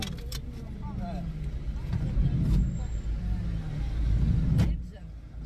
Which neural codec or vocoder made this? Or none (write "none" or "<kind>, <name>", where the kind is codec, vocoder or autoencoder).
none